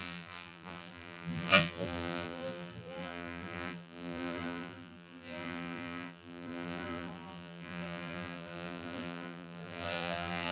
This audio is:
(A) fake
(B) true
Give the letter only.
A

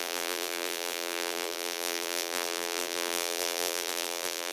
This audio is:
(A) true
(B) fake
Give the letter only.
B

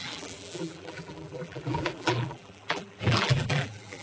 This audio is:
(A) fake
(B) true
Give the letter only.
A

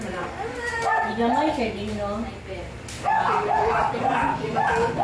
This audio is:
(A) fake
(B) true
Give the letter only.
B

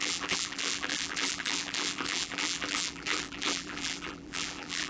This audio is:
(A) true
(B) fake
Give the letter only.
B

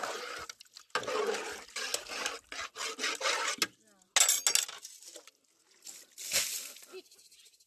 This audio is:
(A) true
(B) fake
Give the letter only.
A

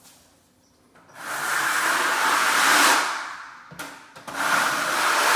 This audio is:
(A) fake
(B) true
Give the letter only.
B